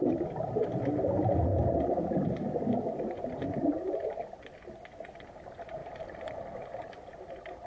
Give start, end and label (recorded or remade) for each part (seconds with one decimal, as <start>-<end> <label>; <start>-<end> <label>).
0.0-7.7 remade